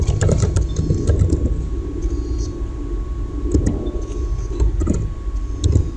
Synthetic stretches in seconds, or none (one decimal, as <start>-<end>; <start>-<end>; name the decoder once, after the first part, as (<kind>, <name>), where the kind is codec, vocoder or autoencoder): none